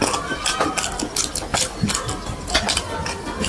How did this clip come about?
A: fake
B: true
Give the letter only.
B